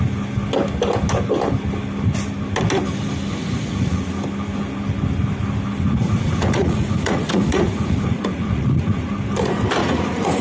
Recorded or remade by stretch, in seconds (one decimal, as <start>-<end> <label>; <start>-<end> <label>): 0.0-3.3 recorded; 3.3-4.1 remade; 4.1-6.0 recorded; 6.0-9.1 remade; 9.1-9.8 recorded; 9.8-10.4 remade